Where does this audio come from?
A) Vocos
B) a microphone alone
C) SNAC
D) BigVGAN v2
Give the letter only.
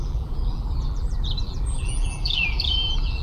D